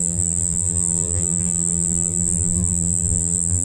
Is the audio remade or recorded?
remade